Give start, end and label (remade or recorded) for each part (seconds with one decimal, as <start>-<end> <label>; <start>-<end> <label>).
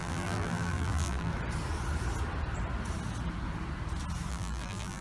0.0-1.3 remade; 1.3-4.3 recorded; 4.3-5.0 remade